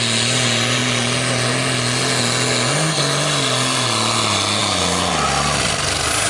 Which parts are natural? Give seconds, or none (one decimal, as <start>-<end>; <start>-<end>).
0.0-6.3